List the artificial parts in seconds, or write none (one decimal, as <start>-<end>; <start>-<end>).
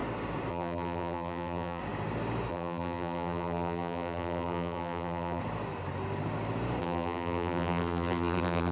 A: 0.5-1.8; 2.5-5.4; 6.8-8.7